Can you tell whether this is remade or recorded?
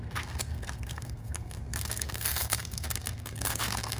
remade